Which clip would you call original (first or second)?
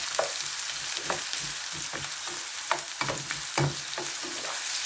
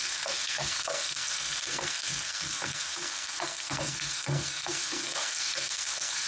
first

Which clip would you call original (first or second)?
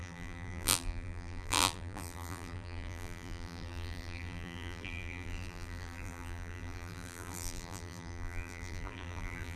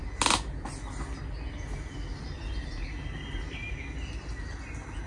second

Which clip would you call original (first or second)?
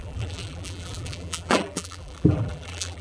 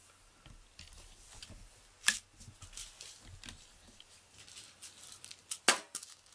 second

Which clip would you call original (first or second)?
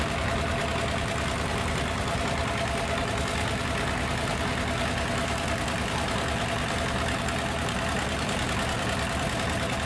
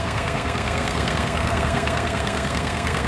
first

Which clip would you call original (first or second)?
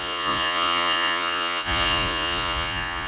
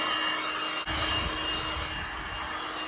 second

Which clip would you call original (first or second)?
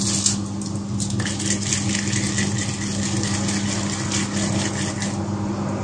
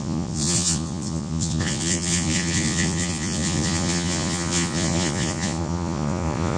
first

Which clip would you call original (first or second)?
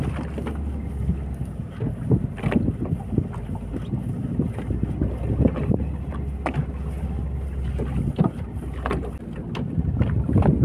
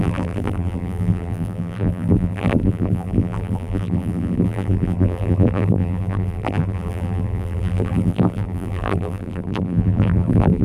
first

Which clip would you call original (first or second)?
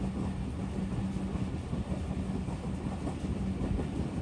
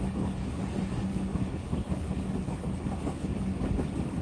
first